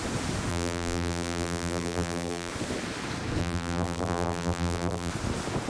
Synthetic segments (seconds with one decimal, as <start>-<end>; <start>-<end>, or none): 0.5-2.5; 3.4-5.1